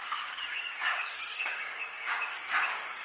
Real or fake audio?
fake